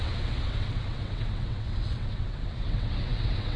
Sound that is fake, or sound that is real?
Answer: fake